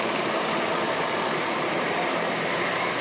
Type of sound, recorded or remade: remade